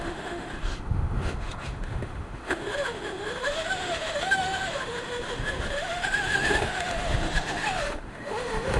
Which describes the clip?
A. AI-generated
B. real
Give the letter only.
A